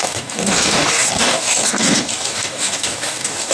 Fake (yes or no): yes